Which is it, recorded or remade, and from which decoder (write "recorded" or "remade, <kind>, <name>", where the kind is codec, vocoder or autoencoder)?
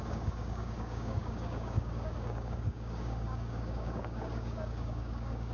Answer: remade, codec, DAC